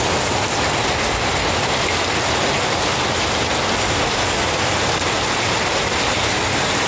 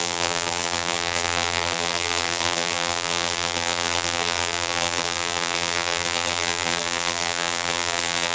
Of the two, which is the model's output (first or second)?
second